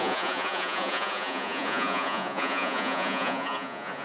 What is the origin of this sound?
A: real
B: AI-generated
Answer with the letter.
B